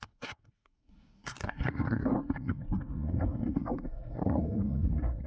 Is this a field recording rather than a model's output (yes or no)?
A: no